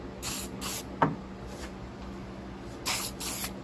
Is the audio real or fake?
real